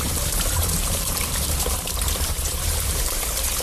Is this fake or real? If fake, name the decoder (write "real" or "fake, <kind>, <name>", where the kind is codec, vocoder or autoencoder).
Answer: fake, vocoder, BigVGAN v2